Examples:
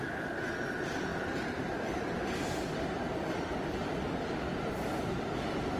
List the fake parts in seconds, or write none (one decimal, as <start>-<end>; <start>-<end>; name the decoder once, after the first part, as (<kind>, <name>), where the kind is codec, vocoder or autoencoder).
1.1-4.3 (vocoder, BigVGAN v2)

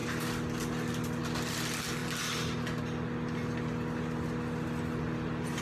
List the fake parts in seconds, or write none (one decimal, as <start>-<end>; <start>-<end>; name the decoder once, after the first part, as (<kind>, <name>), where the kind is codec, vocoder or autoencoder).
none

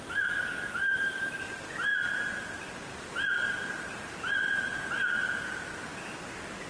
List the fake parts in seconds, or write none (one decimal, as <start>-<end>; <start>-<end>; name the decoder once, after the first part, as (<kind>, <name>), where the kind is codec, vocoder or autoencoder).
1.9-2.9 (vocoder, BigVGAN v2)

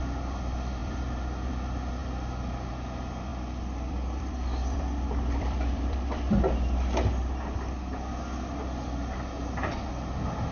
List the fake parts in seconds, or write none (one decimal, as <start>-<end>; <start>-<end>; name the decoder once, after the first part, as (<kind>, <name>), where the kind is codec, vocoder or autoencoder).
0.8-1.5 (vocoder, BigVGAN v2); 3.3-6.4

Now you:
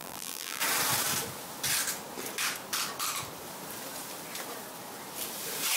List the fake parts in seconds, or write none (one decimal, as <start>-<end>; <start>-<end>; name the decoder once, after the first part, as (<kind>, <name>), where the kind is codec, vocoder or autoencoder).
0.0-0.6 (vocoder, BigVGAN v2)

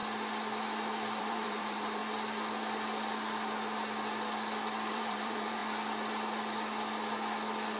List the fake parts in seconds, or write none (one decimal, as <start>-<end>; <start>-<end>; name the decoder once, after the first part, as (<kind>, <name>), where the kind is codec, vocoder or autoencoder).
1.2-2.0 (vocoder, BigVGAN v2); 4.9-5.6

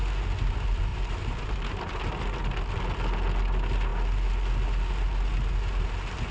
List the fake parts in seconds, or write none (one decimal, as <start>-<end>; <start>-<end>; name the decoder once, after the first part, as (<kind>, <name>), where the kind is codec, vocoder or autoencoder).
0.9-2.0 (vocoder, BigVGAN v2)

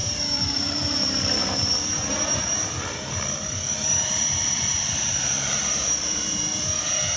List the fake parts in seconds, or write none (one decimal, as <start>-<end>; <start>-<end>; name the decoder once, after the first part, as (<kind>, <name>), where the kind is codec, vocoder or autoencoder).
0.0-2.0 (vocoder, BigVGAN v2); 2.4-6.7